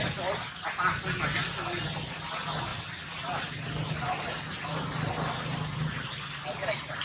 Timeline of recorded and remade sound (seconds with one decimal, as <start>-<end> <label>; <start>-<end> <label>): 0.0-7.0 recorded